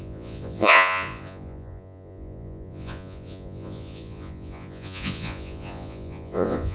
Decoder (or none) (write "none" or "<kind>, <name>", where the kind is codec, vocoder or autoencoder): vocoder, Vocos